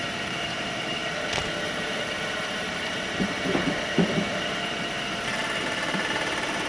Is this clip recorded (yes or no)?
no